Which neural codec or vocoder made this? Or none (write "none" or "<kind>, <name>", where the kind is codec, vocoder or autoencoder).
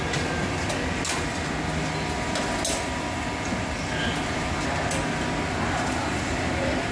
none